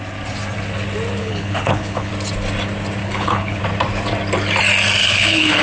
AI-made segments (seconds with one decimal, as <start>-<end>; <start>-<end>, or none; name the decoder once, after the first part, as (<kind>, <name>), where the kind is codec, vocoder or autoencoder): 1.2-2.1 (codec, HILCodec); 3.0-3.6; 5.0-5.6